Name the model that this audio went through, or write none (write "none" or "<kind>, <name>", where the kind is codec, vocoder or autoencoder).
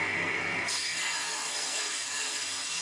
codec, SNAC